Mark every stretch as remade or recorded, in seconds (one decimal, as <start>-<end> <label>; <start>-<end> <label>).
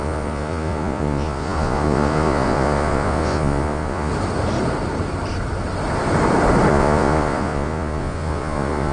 0.0-4.1 remade; 4.1-6.7 recorded; 6.7-8.9 remade